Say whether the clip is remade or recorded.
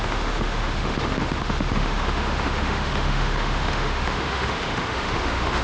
remade